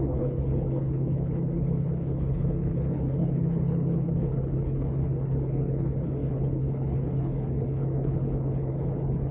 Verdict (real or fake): fake